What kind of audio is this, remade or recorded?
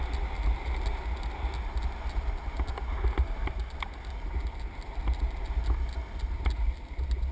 recorded